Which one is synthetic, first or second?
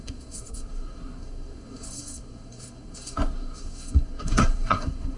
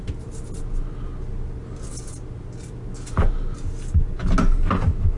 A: first